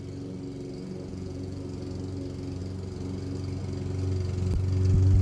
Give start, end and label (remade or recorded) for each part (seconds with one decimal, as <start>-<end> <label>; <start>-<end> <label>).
0.0-1.1 recorded; 1.1-1.6 remade; 1.6-5.2 recorded

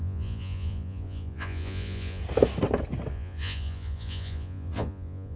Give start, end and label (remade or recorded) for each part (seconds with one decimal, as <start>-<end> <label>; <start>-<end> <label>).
0.0-2.2 remade; 2.2-3.1 recorded; 3.1-5.4 remade

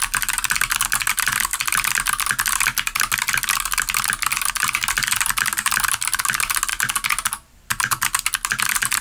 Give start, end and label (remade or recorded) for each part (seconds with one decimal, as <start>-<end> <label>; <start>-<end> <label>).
0.0-9.0 recorded